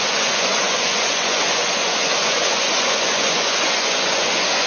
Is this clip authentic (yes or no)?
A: no